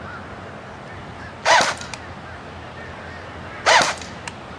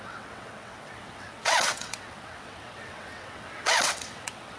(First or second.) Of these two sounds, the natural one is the first